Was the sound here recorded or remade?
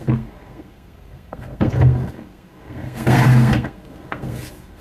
remade